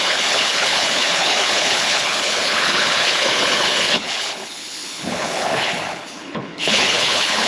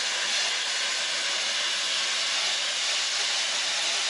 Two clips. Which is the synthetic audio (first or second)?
first